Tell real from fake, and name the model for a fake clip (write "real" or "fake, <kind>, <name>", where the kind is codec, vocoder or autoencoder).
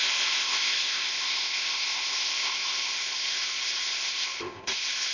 fake, codec, ZipCodec